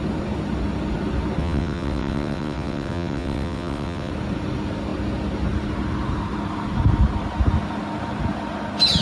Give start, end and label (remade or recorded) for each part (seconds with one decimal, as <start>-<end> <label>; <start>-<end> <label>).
0.0-1.4 recorded; 1.4-4.1 remade; 4.1-9.0 recorded